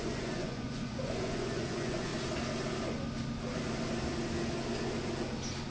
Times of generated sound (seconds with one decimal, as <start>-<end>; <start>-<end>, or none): 0.0-2.1